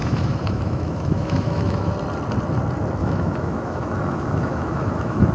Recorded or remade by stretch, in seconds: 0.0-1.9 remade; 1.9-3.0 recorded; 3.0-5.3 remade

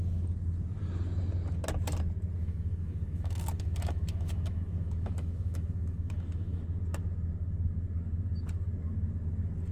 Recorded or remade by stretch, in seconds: 0.0-2.4 recorded; 2.4-6.6 remade; 6.6-9.7 recorded

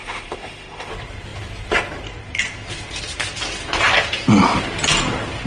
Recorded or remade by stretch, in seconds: 0.0-0.9 remade; 0.9-5.5 recorded

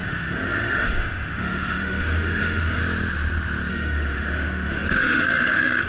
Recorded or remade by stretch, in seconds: 0.0-2.8 remade; 2.8-3.7 recorded; 3.7-5.9 remade

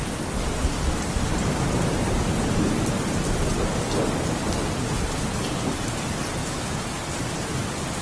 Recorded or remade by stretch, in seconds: 0.0-6.4 recorded; 6.4-7.0 remade; 7.0-8.0 recorded

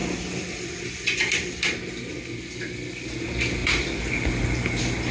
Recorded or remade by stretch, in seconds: 0.0-5.1 recorded

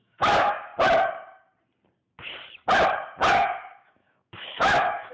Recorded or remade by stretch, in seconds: 0.0-0.7 remade; 0.7-3.3 recorded; 3.3-5.1 remade